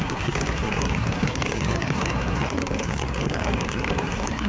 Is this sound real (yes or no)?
no